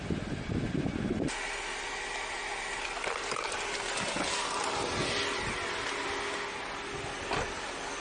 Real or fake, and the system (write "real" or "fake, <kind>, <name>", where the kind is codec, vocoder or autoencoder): real